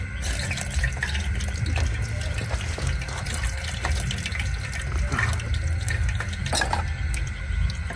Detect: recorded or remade recorded